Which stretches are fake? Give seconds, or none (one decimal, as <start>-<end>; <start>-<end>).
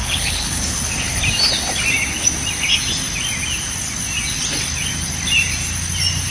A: 0.0-0.9